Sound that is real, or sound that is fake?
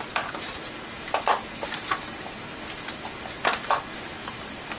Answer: real